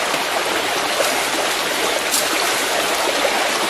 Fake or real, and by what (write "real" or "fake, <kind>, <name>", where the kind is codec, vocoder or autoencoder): fake, vocoder, BigVGAN v2